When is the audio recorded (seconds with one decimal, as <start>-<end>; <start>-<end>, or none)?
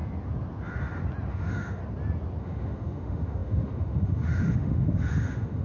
0.0-1.3; 1.8-2.4